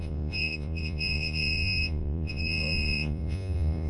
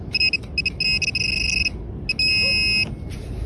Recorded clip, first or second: second